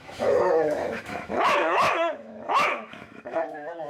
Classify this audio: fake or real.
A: fake